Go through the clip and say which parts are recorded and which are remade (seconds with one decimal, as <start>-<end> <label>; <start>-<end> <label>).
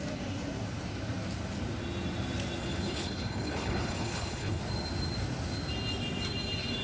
0.0-2.6 recorded; 2.6-4.6 remade; 4.6-6.8 recorded